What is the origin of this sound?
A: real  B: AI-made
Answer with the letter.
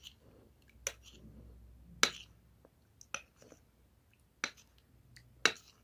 A